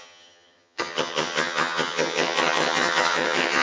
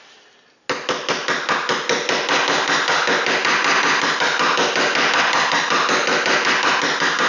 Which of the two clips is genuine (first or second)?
second